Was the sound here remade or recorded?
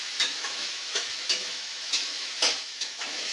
remade